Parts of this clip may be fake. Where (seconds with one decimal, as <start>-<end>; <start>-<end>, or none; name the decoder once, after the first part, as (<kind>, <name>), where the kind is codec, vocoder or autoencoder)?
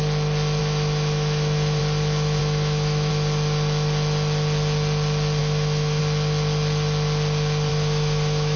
0.6-1.8 (autoencoder, DAC-VAE); 2.4-3.1; 5.4-6.0; 7.7-8.6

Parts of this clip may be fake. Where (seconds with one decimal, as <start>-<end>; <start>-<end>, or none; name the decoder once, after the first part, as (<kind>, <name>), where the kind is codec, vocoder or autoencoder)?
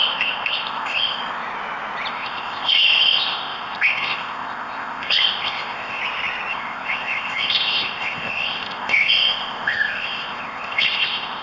0.0-1.2 (codec, ZipCodec); 2.1-6.0; 6.5-11.4